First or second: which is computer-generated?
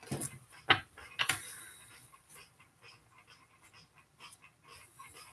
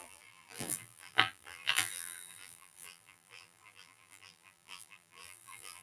second